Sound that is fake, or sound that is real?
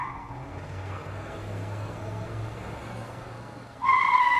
fake